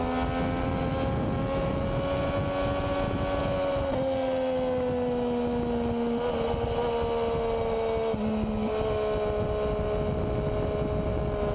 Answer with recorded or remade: recorded